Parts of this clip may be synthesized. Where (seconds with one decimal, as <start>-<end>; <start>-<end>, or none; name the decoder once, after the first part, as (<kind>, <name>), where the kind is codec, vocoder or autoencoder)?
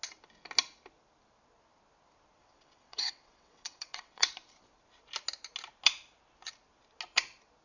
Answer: 2.4-4.3 (vocoder, WaveNeXt)